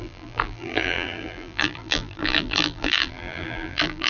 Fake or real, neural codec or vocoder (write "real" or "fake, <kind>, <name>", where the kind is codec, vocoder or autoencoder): fake, vocoder, BigVGAN v2